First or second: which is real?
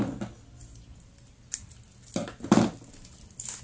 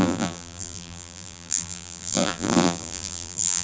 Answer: first